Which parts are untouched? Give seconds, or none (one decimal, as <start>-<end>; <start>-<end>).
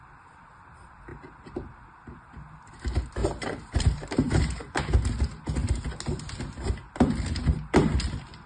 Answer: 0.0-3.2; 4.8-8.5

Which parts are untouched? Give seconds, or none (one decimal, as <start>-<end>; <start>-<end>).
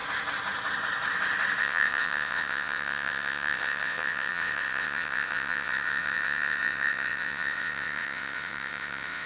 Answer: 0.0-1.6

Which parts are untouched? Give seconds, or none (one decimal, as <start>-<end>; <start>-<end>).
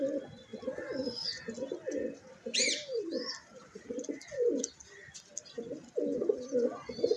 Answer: 0.0-7.2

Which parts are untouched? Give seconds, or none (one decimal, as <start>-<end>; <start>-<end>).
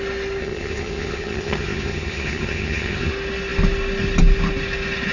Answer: 0.0-0.4; 3.1-5.1